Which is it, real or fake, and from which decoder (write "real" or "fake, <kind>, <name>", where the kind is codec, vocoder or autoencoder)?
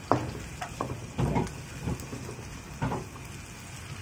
real